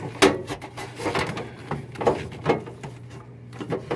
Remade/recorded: recorded